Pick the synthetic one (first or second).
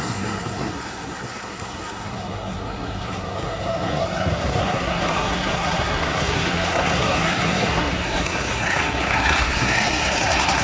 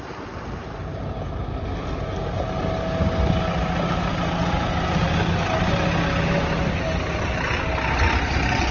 first